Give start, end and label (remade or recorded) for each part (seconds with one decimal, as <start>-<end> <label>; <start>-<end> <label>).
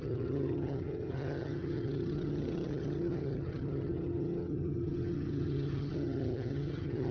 0.0-7.1 remade